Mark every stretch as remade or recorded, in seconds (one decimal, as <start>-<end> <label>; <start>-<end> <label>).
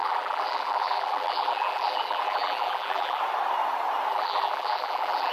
0.0-3.2 remade; 3.2-4.1 recorded; 4.1-5.3 remade